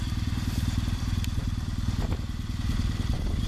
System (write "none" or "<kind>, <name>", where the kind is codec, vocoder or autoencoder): vocoder, BigVGAN v2